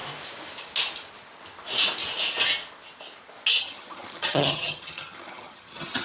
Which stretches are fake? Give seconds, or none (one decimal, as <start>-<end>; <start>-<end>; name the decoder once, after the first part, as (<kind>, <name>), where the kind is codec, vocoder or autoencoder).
3.6-6.0 (vocoder, HiFi-GAN)